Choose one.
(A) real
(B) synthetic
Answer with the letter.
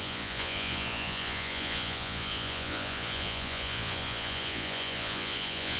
B